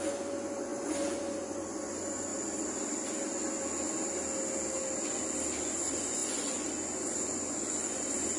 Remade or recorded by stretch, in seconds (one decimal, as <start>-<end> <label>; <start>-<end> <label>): 0.0-2.3 remade; 2.3-5.6 recorded; 5.6-8.4 remade